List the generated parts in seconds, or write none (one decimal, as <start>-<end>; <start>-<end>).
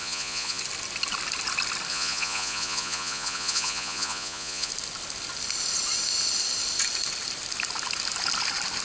0.0-0.6; 1.9-4.7